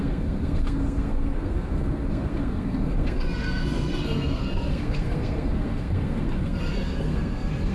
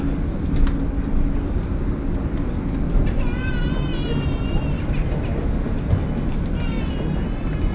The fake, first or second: first